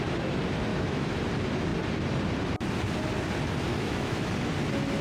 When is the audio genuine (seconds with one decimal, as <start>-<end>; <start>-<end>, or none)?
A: 0.0-0.7; 1.2-3.7; 4.3-5.0